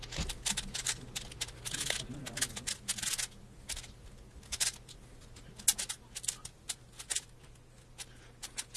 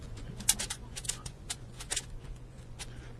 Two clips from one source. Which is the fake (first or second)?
second